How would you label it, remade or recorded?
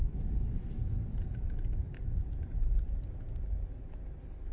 recorded